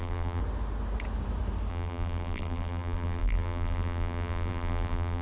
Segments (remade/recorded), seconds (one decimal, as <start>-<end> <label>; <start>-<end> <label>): 0.0-0.4 remade; 0.4-1.7 recorded; 1.7-5.2 remade